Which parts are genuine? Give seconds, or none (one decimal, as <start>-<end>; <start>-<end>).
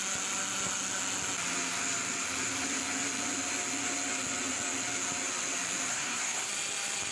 0.0-5.9; 6.5-7.1